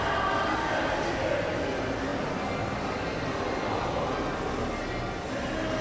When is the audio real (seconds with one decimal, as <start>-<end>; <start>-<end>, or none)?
0.0-5.8

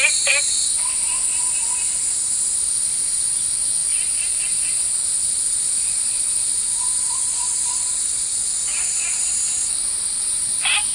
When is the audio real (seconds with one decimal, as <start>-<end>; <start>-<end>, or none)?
1.2-2.5; 8.3-9.3

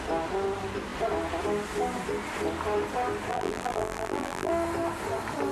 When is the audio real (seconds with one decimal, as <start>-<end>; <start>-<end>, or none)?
0.0-3.3; 4.5-5.5

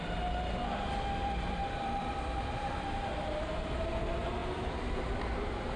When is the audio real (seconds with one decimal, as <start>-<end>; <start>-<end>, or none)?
0.0-1.2; 3.4-4.4; 4.9-5.8